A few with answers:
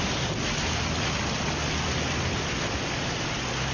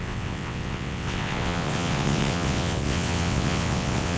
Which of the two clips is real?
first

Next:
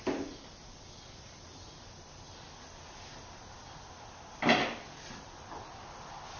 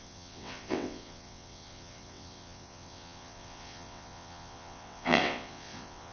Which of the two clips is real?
first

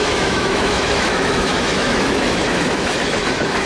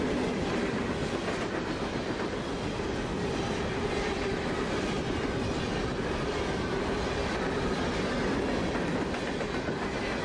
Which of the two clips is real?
second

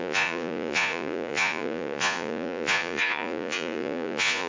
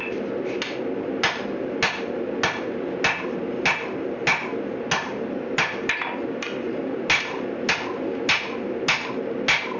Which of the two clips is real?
second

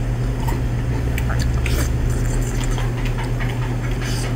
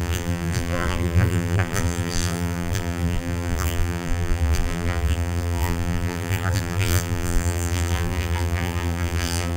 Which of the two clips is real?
first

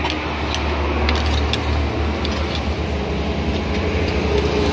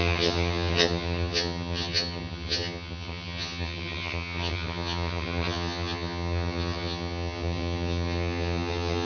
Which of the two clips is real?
first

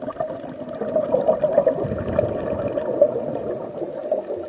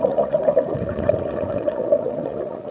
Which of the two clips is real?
first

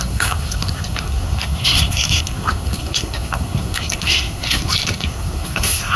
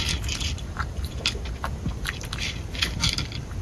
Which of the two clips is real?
second